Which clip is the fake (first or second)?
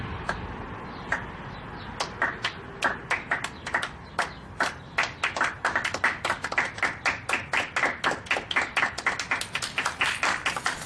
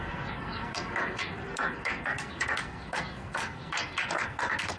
second